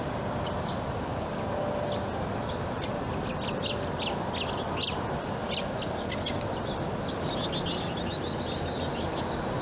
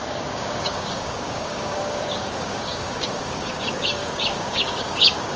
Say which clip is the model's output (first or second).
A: second